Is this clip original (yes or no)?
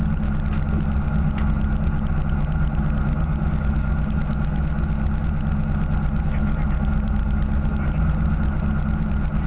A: yes